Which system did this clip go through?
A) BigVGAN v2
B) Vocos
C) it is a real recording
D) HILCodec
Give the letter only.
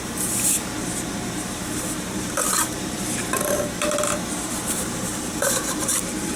A